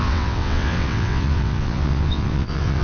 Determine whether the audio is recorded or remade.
remade